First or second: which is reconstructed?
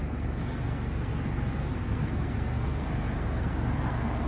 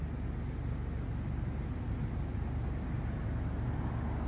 first